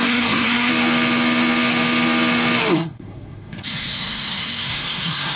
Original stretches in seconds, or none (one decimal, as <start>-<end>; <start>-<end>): 0.7-2.7